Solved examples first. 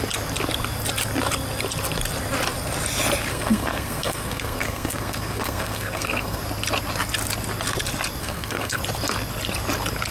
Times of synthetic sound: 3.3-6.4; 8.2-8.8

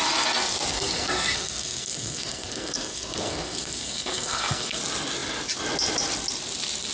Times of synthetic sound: 0.7-4.8